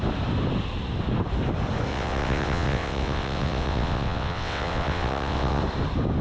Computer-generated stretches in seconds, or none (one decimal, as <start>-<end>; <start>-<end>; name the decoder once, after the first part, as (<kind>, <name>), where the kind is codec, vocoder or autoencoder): 1.9-5.6 (vocoder, WaveNeXt)